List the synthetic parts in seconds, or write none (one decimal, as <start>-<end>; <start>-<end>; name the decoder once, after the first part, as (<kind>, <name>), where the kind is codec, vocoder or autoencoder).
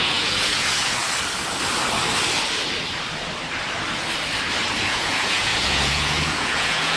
0.0-1.0 (vocoder, Vocos); 4.8-7.0